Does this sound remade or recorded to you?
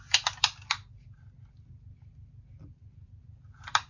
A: recorded